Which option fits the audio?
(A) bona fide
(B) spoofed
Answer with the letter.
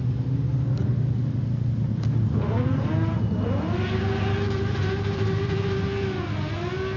A